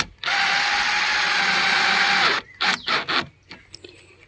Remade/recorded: recorded